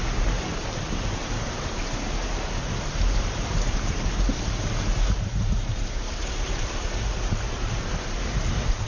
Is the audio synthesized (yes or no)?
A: yes